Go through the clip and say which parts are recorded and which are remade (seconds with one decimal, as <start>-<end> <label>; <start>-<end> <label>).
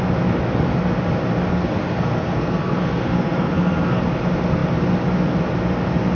0.0-1.5 recorded; 1.5-4.0 remade; 4.0-6.1 recorded